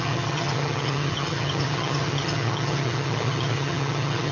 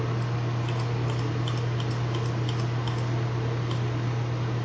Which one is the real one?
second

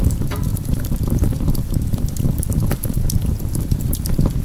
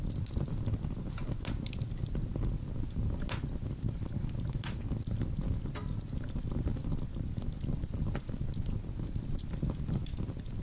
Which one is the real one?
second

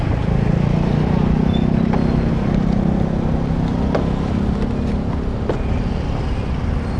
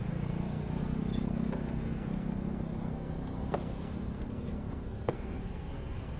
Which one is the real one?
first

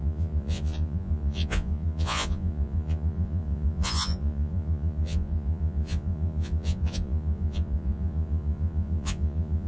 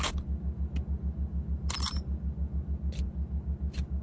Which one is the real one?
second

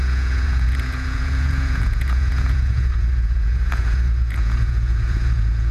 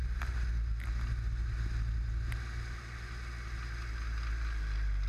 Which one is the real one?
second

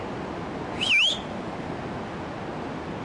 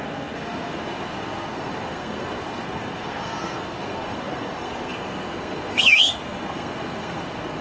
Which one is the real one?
first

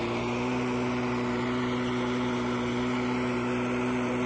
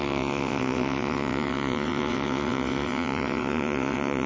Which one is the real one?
first